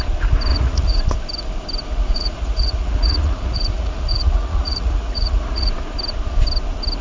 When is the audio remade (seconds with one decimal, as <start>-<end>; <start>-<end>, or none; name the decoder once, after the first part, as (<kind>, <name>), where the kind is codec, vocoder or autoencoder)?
0.5-1.0 (vocoder, Vocos); 2.0-5.7